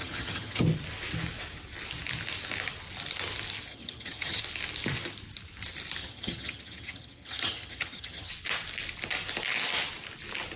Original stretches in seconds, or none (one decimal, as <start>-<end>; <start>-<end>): 0.6-3.7; 4.4-6.0; 8.3-10.6